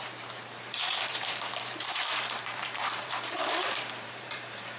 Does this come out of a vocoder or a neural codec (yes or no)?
yes